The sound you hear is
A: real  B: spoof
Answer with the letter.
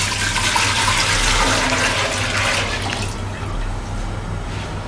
A